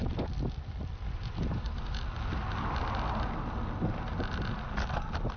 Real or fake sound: real